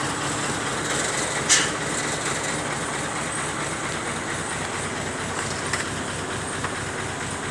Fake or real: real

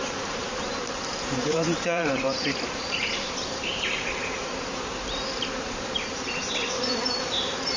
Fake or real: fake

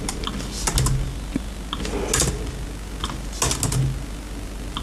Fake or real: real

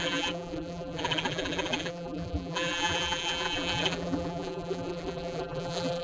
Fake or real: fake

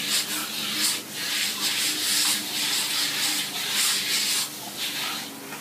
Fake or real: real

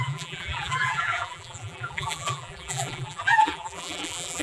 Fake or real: fake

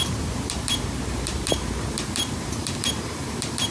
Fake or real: fake